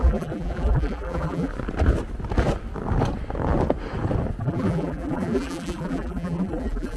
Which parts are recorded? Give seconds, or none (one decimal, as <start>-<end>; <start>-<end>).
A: 1.5-4.4